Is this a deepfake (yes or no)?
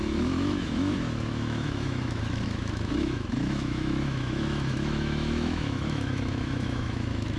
yes